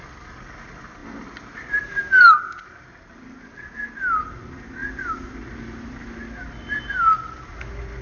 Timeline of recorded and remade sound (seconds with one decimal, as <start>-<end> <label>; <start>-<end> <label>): 0.0-8.0 recorded